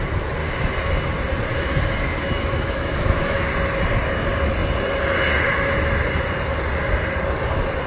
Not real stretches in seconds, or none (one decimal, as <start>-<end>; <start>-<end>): 0.4-1.0; 1.5-3.5